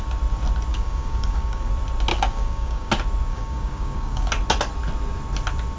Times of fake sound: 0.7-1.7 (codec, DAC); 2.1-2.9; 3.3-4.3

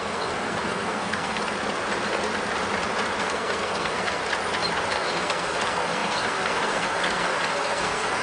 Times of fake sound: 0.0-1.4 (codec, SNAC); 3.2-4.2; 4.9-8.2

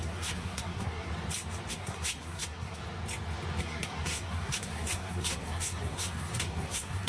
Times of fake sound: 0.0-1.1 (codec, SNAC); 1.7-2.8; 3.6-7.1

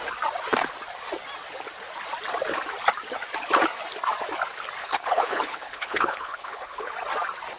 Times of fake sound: 4.8-6.9 (codec, HILCodec)